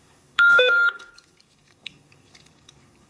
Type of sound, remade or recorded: remade